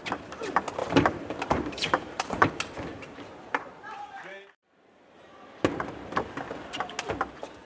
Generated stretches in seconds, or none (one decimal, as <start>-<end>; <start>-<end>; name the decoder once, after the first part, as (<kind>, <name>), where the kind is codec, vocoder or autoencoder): 0.8-2.5 (vocoder, BigVGAN v2); 2.9-4.9